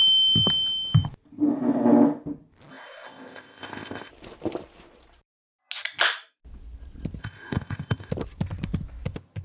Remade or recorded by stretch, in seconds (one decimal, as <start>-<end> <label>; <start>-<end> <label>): 0.0-2.7 recorded; 2.7-4.1 remade; 4.1-7.2 recorded; 7.2-8.1 remade; 8.1-9.4 recorded